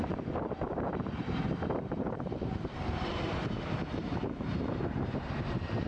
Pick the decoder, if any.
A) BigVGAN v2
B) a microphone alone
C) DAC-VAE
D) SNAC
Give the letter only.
A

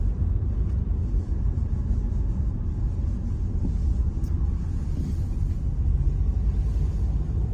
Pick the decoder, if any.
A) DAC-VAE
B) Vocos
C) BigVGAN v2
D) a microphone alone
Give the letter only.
D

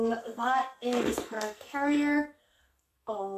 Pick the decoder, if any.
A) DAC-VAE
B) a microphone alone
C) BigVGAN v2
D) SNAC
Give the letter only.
D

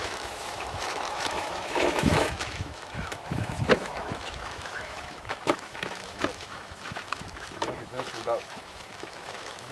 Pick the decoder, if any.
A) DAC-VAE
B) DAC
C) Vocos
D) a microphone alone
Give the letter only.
A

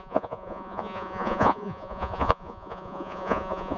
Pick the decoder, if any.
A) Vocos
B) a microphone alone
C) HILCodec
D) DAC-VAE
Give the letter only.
A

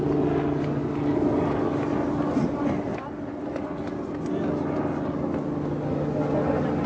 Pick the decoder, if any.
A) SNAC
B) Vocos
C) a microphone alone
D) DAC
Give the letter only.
C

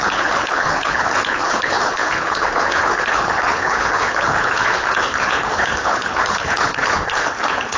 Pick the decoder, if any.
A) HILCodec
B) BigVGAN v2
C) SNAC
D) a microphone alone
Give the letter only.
A